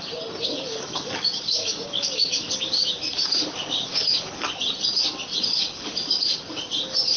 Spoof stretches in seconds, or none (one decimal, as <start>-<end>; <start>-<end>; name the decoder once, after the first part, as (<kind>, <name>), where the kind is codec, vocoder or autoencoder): 0.5-4.4 (codec, DAC); 5.5-6.2